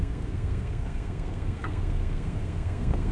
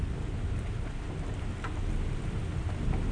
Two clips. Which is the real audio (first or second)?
second